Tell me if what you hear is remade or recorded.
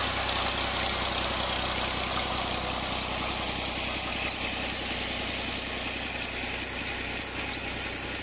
recorded